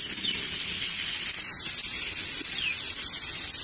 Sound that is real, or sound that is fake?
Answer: real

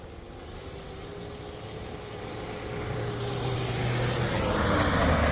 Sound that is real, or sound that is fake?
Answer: real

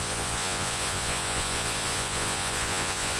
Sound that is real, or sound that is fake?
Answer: fake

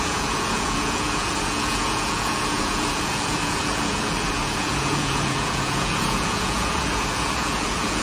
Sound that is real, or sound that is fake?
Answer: fake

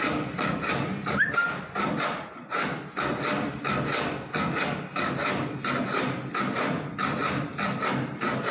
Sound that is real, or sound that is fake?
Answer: real